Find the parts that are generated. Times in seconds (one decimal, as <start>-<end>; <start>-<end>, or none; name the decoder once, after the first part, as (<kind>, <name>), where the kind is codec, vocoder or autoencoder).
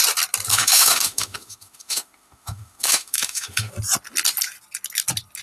0.5-3.7 (autoencoder, DAC-VAE)